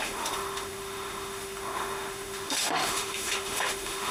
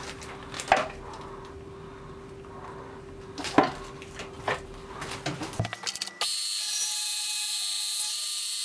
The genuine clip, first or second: second